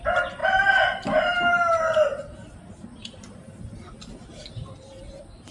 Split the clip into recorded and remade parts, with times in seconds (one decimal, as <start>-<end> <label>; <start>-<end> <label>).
0.0-0.4 recorded; 0.4-3.6 remade; 3.6-5.5 recorded